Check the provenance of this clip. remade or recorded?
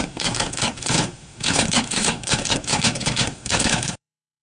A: remade